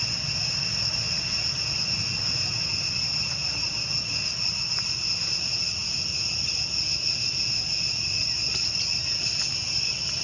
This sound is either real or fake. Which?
real